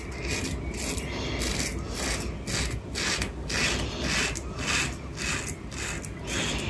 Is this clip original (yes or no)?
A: yes